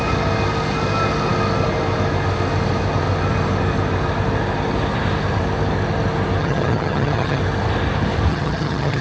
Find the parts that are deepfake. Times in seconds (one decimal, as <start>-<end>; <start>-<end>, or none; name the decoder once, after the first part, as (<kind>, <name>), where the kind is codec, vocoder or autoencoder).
6.4-7.4 (vocoder, HiFi-GAN); 8.3-9.0